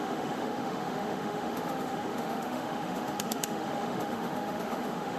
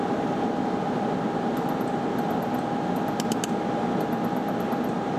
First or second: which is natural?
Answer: second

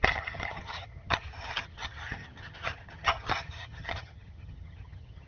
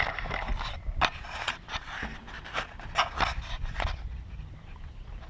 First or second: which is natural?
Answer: second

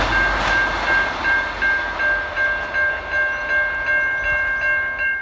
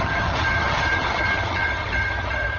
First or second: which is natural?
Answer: first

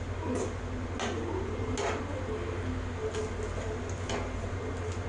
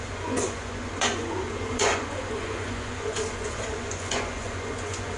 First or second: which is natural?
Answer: first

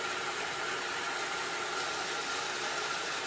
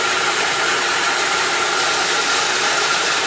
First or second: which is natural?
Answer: first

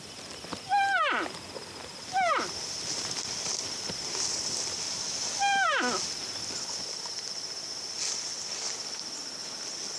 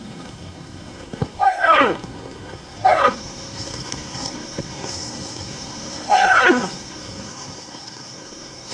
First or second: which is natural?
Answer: first